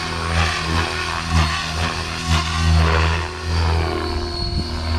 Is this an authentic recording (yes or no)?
yes